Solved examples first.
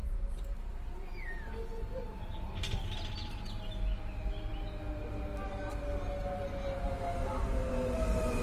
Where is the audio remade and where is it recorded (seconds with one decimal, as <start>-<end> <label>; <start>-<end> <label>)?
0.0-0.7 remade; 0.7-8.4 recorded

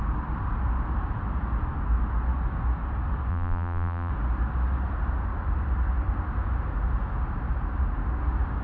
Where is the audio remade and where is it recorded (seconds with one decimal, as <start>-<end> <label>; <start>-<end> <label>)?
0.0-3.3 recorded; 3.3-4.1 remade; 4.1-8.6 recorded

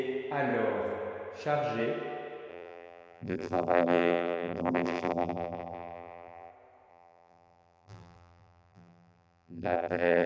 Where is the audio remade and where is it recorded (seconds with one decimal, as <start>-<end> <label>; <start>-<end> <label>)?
0.0-2.5 recorded; 2.5-6.5 remade; 6.5-6.9 recorded; 6.9-10.3 remade

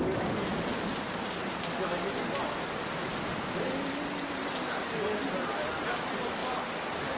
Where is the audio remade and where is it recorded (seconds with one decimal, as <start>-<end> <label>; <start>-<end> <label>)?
0.0-7.2 recorded